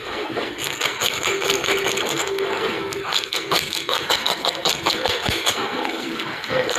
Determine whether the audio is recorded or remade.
remade